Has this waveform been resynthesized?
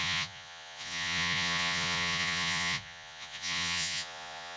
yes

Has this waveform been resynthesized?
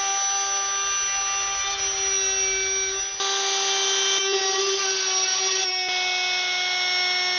no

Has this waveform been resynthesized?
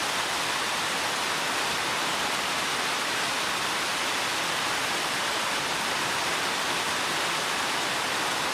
yes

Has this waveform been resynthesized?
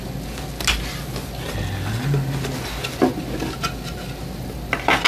no